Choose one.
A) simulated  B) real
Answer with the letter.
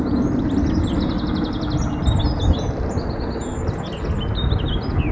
B